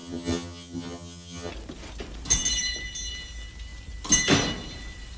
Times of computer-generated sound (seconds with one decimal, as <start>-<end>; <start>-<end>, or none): 0.0-1.5